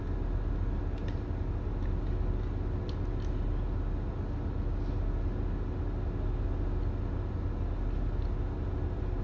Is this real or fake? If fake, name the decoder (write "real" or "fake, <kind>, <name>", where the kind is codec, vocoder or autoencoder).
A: real